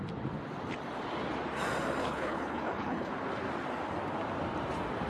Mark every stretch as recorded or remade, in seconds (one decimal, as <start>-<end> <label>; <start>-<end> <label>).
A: 0.0-2.0 recorded; 2.0-3.1 remade; 3.1-5.1 recorded